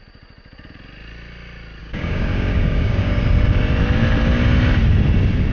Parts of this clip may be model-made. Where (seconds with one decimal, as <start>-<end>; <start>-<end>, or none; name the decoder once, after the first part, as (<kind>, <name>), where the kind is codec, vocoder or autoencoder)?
1.8-3.2 (codec, DAC)